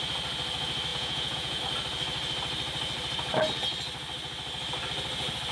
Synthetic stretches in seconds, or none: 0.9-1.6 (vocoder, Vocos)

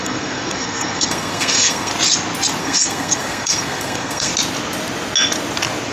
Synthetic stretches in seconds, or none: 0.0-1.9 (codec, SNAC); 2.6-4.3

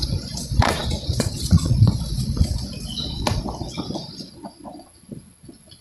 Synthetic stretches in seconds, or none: 0.0-5.8 (vocoder, Vocos)